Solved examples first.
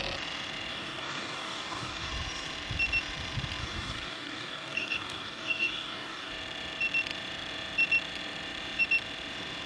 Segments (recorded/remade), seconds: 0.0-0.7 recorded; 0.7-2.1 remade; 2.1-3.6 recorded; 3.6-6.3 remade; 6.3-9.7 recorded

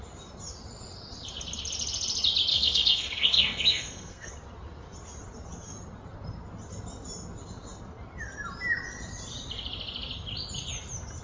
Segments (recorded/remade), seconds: 0.0-2.5 recorded; 2.5-4.3 remade; 4.3-11.2 recorded

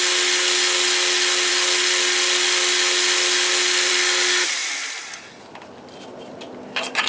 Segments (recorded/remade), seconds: 0.0-7.1 recorded

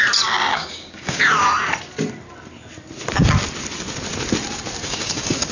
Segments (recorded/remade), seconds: 0.0-0.5 recorded; 0.5-1.2 remade; 1.2-4.8 recorded; 4.8-5.5 remade

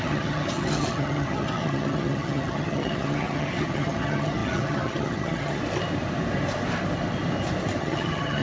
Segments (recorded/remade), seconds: 0.0-5.6 remade; 5.6-7.8 recorded; 7.8-8.4 remade

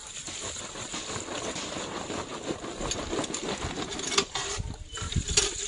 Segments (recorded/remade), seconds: 0.0-0.6 recorded; 0.6-2.3 remade; 2.3-3.1 recorded; 3.1-5.7 remade

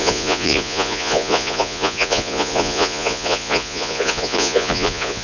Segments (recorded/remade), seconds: 0.0-5.2 remade